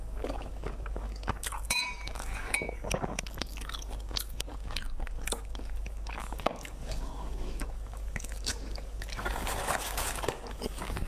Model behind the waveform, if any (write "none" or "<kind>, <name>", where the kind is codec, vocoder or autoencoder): codec, DAC